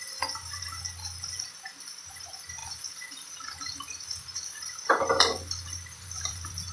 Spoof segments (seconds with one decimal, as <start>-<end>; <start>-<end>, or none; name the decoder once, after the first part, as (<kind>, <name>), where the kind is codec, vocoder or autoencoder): 2.6-6.7 (vocoder, BigVGAN v2)